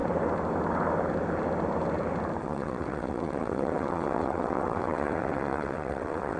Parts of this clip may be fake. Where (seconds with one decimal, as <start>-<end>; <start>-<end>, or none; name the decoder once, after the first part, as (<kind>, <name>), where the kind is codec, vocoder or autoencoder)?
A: 2.4-6.4 (vocoder, WaveNeXt)